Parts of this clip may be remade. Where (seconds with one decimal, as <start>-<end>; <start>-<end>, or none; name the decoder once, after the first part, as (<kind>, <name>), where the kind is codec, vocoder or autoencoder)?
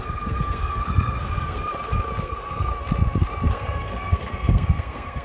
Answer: 0.0-1.7 (codec, SNAC); 2.2-2.7; 3.5-5.2